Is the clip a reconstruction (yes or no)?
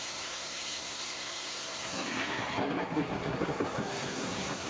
yes